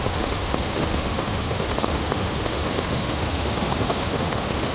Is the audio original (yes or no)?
no